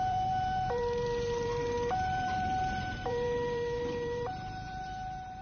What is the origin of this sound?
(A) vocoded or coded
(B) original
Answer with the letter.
A